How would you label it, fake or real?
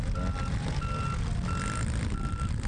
real